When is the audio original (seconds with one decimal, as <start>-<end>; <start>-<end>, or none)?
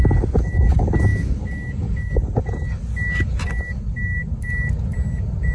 0.0-5.5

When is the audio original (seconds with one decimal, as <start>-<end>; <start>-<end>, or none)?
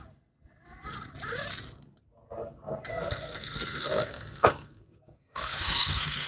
0.0-2.9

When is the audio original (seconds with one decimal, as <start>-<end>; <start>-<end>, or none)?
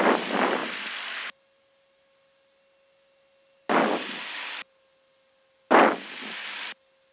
0.0-7.1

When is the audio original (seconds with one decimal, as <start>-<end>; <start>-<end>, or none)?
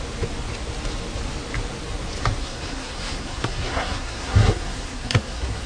0.0-2.4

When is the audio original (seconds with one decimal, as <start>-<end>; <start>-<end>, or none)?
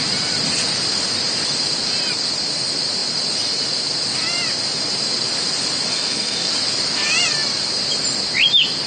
0.0-5.9; 6.5-8.9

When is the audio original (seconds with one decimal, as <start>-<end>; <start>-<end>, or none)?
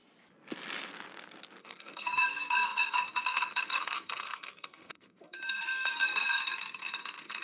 0.0-1.6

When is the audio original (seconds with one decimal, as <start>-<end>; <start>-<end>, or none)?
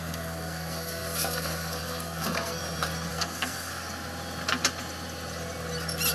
2.6-3.1; 3.7-6.1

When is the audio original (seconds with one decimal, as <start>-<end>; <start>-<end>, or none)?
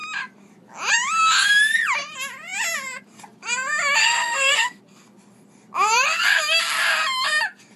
0.0-4.0; 4.8-7.8